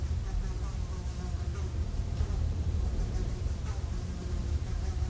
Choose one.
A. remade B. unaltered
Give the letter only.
A